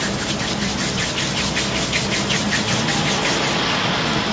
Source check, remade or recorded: recorded